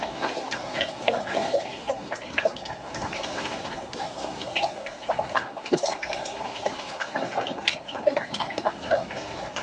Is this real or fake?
fake